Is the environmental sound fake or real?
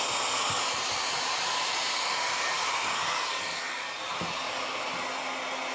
real